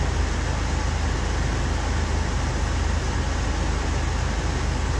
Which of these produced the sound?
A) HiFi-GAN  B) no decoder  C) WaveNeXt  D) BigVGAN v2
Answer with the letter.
B